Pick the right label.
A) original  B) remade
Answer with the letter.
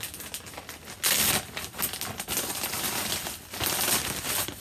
A